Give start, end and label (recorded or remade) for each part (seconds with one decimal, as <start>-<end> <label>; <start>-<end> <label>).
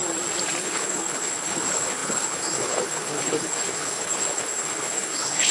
0.0-0.6 recorded; 0.6-5.5 remade